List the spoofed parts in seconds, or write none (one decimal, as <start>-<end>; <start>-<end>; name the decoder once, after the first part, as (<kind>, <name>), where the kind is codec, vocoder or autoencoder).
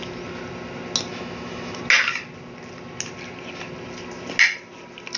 1.1-1.8 (autoencoder, DAC-VAE)